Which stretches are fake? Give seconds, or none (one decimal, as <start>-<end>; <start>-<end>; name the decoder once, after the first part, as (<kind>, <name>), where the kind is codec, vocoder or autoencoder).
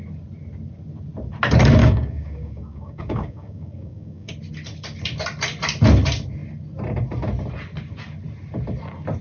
1.8-4.3 (codec, DAC)